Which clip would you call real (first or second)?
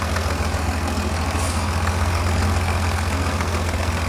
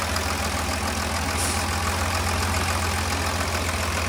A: second